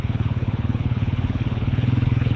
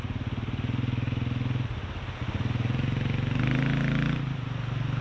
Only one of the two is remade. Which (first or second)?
first